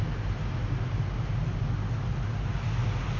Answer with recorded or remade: recorded